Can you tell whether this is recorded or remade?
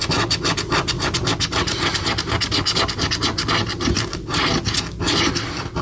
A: recorded